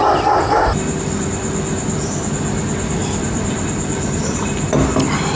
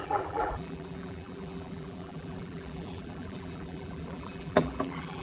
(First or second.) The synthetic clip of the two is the second